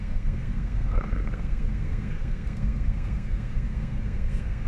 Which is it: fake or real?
fake